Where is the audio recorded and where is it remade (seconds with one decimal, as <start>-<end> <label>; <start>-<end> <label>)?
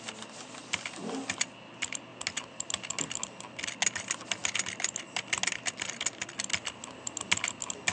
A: 0.0-7.9 recorded